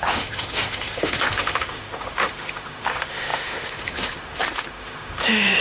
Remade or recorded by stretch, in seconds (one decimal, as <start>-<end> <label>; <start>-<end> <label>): 0.0-5.6 remade